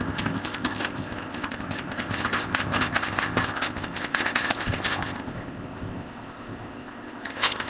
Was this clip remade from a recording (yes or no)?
yes